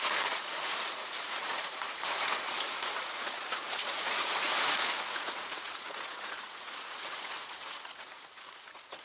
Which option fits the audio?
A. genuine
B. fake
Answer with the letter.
B